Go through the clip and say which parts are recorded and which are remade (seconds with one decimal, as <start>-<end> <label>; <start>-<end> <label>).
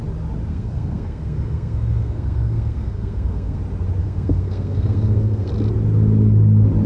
0.0-0.5 recorded; 0.5-3.6 remade; 3.6-4.0 recorded; 4.0-5.5 remade; 5.5-6.9 recorded